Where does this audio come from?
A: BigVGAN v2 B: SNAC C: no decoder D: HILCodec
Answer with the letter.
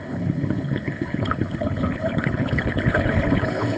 D